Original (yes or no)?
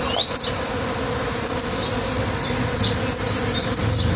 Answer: yes